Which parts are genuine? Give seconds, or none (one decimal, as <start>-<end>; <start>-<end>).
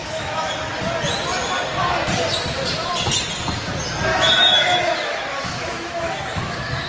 0.5-4.1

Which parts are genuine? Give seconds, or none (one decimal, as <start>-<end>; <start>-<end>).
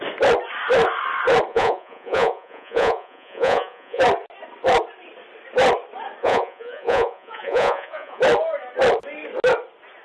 0.0-1.5; 4.0-6.2; 8.2-10.0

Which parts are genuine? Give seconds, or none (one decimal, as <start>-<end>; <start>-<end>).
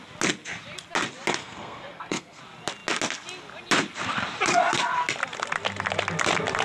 0.0-1.4; 2.4-6.6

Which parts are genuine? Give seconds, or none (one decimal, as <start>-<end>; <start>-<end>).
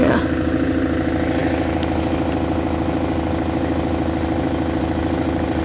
0.0-5.6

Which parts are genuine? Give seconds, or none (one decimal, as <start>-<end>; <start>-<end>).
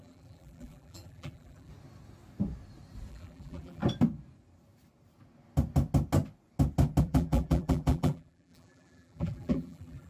1.7-3.1; 3.8-7.0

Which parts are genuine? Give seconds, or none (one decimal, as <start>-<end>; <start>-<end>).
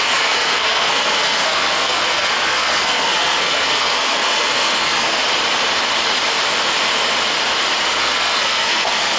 5.2-8.0